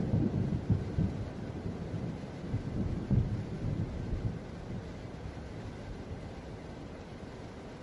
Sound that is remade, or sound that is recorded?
recorded